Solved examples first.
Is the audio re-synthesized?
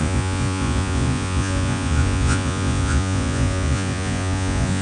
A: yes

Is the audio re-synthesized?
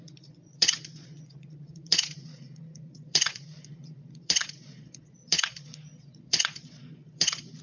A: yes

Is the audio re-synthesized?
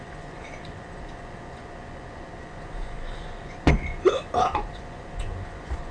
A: yes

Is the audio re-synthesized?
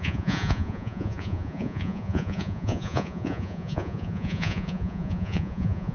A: yes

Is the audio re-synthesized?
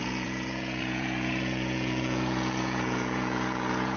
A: yes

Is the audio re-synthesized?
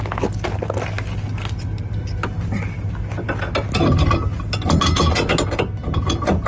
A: no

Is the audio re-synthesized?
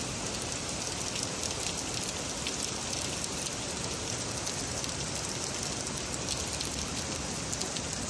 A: no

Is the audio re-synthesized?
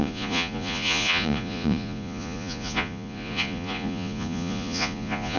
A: yes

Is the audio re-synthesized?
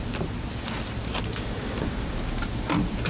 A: no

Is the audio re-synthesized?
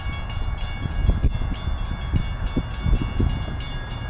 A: no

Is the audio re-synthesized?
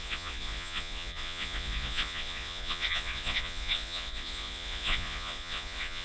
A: yes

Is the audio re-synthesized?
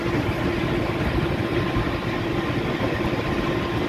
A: no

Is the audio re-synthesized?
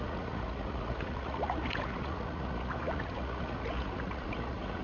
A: yes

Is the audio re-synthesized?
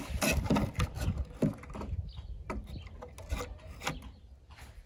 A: no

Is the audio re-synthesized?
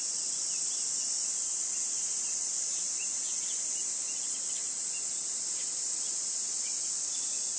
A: no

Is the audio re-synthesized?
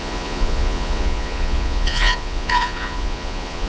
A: yes